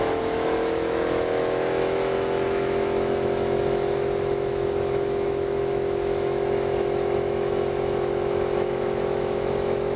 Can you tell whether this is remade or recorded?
remade